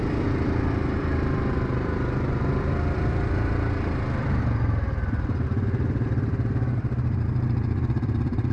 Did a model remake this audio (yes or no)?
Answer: yes